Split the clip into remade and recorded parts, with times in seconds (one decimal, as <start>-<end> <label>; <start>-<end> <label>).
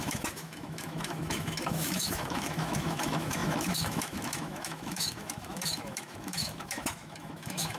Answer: 0.0-7.8 remade